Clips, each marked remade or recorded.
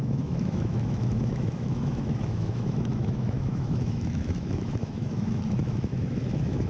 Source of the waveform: remade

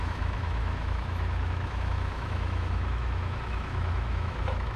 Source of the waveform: remade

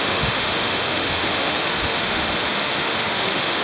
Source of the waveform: remade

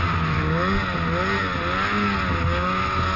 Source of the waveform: recorded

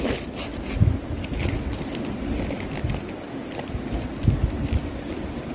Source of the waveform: recorded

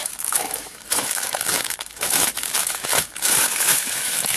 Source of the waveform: remade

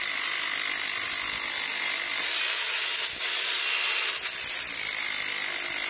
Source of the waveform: recorded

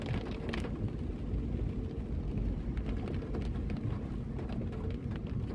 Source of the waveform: recorded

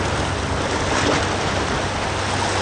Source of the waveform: recorded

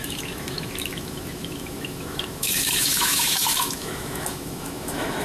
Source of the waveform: remade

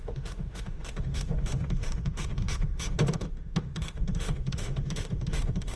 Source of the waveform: remade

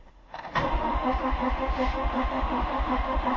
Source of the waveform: remade